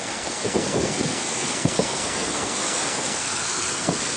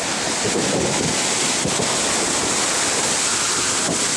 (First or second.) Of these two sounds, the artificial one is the first